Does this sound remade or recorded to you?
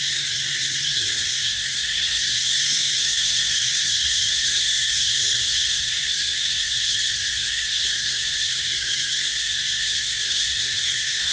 remade